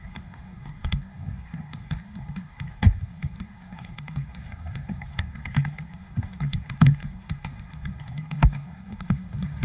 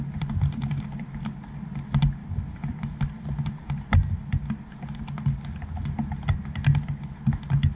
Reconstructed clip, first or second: first